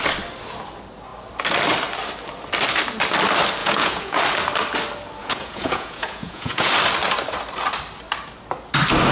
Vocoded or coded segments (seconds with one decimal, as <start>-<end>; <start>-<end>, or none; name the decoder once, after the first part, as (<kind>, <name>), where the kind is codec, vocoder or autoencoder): 3.6-4.2 (vocoder, Vocos); 5.2-6.7